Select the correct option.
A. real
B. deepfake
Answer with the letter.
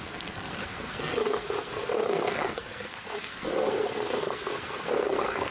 B